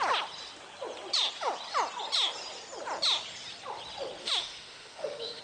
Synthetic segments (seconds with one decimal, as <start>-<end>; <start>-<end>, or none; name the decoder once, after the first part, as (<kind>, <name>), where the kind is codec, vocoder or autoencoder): 4.2-5.4 (autoencoder, DAC-VAE)